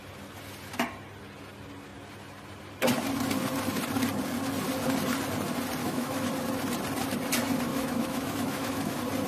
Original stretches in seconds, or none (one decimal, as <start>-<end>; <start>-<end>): 0.0-5.8; 6.3-7.7; 8.9-9.3